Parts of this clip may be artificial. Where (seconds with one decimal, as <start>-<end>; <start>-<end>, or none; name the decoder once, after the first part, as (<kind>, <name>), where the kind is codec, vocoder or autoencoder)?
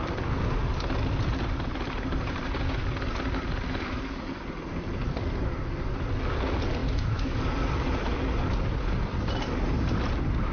6.8-7.4 (autoencoder, DAC-VAE)